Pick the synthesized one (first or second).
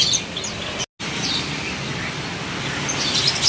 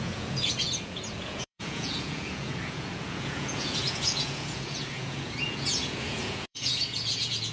second